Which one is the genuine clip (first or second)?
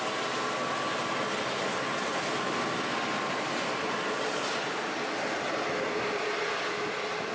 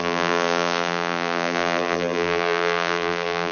first